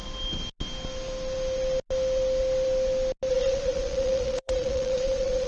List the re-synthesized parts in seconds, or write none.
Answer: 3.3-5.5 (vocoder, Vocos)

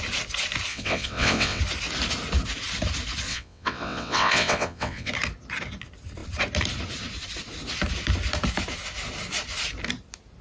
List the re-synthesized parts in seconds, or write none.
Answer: 0.7-1.6 (vocoder, WaveNeXt); 3.3-5.1

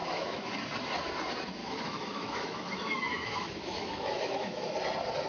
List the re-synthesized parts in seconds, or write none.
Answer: 0.0-0.5 (autoencoder, DAC-VAE); 1.6-4.7

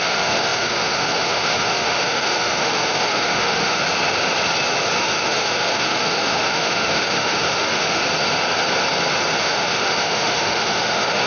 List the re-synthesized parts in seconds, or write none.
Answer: 0.0-3.8 (autoencoder, DAC-VAE); 5.0-8.0; 9.4-11.3

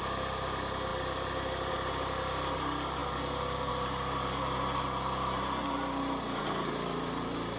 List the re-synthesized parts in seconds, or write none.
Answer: none

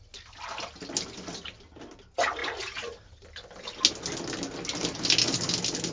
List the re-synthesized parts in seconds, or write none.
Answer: none